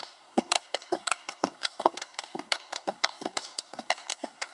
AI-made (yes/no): yes